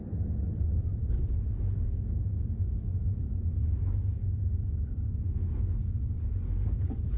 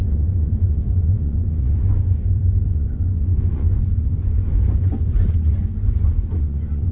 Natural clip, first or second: first